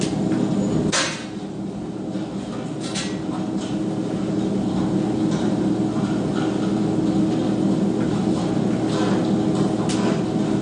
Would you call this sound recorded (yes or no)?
yes